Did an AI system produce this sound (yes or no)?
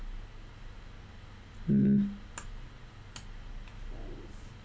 no